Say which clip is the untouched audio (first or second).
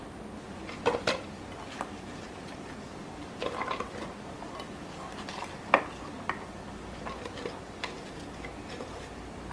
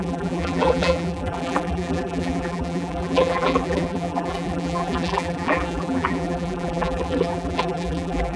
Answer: first